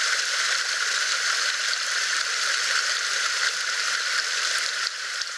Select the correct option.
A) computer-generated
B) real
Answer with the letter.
A